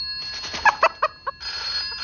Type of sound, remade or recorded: recorded